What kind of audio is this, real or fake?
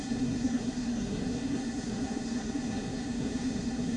fake